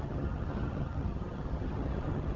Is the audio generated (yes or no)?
yes